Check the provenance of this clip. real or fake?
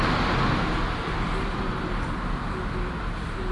real